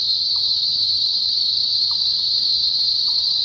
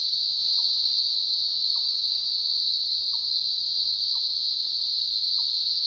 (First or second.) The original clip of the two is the second